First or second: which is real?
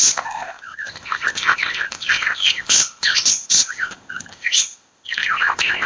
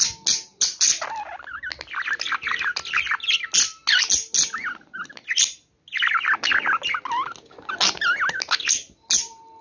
second